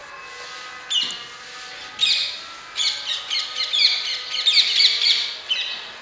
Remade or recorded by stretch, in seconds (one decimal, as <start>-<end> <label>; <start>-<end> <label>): 0.0-6.0 recorded